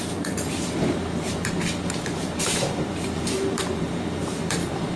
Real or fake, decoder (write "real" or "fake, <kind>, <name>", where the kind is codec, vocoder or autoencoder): fake, vocoder, BigVGAN v2